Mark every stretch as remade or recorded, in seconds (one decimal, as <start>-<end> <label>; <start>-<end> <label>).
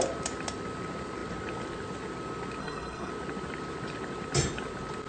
0.0-2.6 recorded; 2.6-3.1 remade; 3.1-5.1 recorded